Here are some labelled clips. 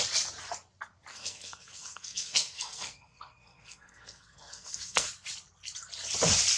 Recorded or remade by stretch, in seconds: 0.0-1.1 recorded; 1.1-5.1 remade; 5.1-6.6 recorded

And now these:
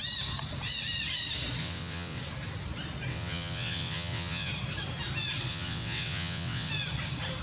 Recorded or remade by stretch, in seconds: 0.0-1.6 recorded; 1.6-2.2 remade; 2.2-3.1 recorded; 3.1-4.5 remade; 4.5-5.5 recorded; 5.5-6.7 remade; 6.7-7.4 recorded

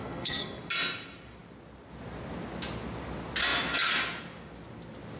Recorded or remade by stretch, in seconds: 0.0-0.6 remade; 0.6-5.2 recorded

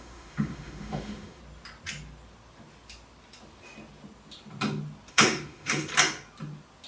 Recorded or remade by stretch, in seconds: 0.0-1.4 remade; 1.4-5.1 recorded; 5.1-5.9 remade; 5.9-6.9 recorded